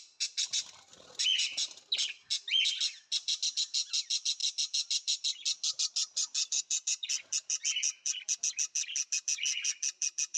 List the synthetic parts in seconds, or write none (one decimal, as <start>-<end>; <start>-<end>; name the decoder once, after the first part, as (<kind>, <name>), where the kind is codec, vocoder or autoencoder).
none